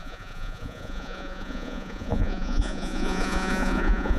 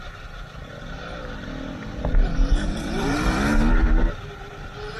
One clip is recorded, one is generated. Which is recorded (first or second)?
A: second